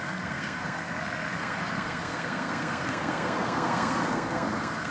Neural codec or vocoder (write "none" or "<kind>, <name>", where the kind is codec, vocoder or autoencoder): codec, SNAC